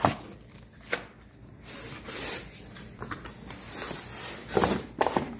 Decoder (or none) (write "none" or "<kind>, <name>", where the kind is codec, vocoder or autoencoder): none